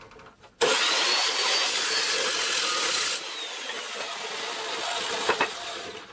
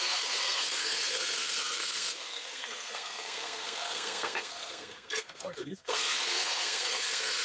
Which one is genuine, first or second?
first